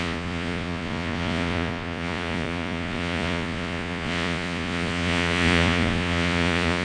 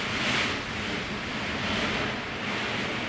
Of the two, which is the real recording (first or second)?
second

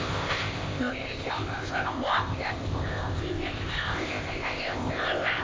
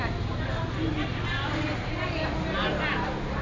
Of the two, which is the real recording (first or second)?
second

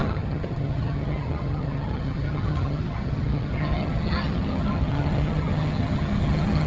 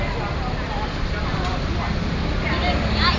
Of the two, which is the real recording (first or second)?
second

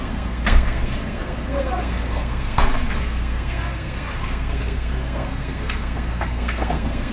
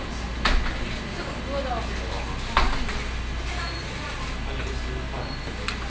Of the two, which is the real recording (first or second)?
second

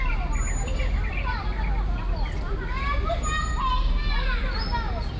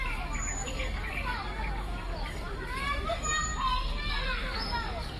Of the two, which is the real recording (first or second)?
first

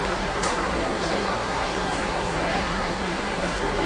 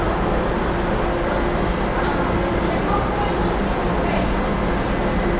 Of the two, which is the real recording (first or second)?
second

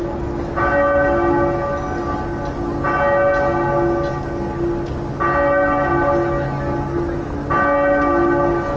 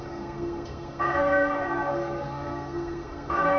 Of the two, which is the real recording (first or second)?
first